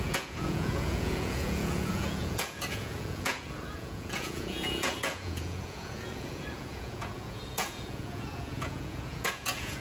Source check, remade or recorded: remade